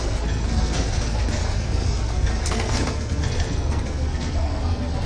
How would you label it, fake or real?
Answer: fake